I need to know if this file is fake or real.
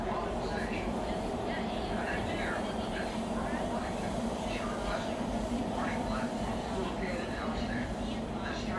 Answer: fake